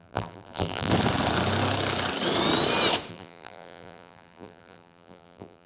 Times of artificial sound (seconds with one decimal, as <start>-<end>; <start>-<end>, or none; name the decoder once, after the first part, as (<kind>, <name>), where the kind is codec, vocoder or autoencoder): 0.0-0.9 (vocoder, BigVGAN v2); 3.1-5.7